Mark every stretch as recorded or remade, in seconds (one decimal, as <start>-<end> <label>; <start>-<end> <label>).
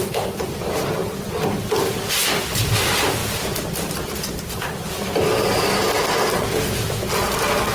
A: 0.0-7.7 recorded